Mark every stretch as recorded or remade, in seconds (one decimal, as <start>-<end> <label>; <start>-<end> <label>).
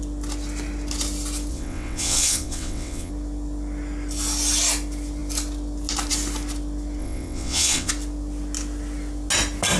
0.0-1.5 recorded; 1.5-3.1 remade; 3.1-7.0 recorded; 7.0-7.9 remade; 7.9-9.8 recorded